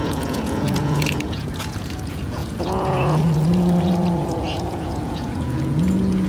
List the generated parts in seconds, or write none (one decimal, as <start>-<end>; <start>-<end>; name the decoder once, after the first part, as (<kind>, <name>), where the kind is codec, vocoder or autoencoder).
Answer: 0.0-6.3 (vocoder, Vocos)